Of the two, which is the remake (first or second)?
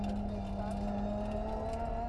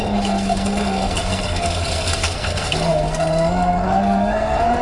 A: second